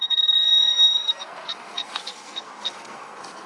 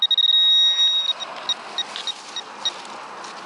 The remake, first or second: first